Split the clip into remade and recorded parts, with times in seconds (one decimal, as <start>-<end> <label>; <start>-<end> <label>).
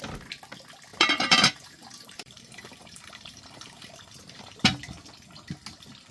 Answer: 0.0-0.9 recorded; 0.9-4.6 remade; 4.6-6.1 recorded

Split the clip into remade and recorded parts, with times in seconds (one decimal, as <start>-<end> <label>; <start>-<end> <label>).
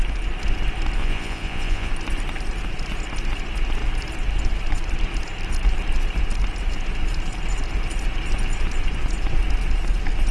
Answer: 0.0-1.0 recorded; 1.0-1.9 remade; 1.9-10.3 recorded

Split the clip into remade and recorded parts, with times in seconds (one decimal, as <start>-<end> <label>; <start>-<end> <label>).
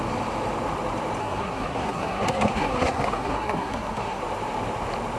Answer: 0.0-1.2 recorded; 1.2-4.2 remade; 4.2-5.2 recorded